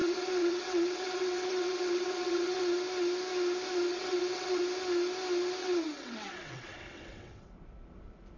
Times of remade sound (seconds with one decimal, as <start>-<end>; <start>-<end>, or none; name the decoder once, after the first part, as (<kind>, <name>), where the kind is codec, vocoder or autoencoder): 0.0-2.6 (vocoder, WaveNeXt); 3.9-4.6; 5.6-7.5